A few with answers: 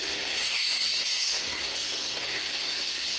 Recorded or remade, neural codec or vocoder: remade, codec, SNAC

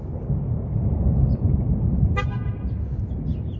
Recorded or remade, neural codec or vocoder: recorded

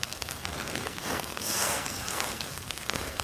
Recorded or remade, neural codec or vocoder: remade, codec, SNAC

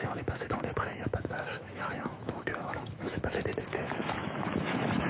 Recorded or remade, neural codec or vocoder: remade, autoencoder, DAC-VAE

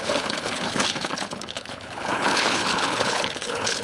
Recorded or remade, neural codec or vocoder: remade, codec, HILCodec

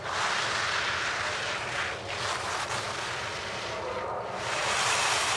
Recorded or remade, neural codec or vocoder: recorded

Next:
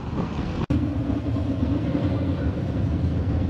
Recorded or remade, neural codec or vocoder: remade, codec, SNAC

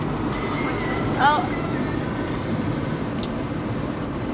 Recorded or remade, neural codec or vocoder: remade, vocoder, BigVGAN v2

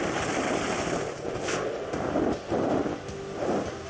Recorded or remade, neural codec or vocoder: recorded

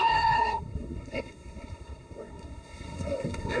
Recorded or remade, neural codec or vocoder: remade, codec, SNAC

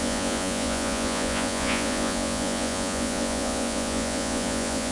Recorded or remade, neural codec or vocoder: remade, vocoder, Vocos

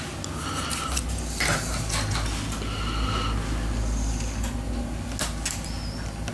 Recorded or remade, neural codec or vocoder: recorded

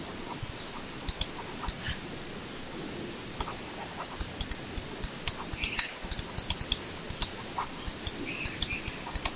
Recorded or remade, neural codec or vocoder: recorded